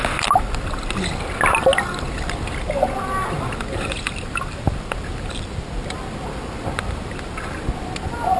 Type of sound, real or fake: real